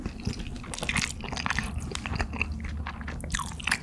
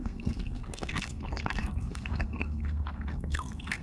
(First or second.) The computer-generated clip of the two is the second